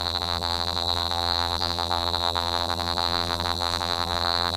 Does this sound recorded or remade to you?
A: remade